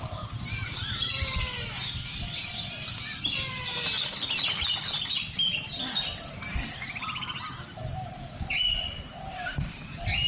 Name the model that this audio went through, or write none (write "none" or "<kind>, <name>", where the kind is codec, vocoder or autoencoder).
none